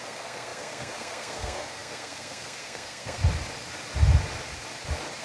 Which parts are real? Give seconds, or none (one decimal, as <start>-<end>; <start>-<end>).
3.2-5.2